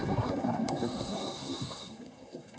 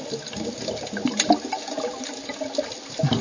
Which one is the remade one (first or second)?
first